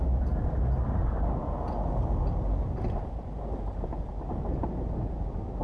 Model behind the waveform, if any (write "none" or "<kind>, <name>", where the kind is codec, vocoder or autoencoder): none